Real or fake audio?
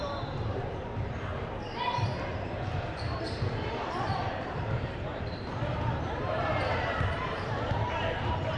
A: fake